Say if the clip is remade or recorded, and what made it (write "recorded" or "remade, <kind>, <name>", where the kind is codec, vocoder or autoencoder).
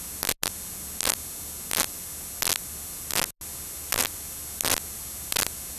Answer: recorded